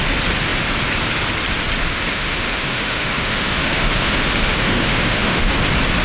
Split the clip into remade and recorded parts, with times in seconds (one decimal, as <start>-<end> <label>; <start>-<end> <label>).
0.0-1.9 recorded; 1.9-5.5 remade; 5.5-6.0 recorded